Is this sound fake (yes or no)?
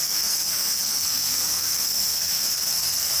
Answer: yes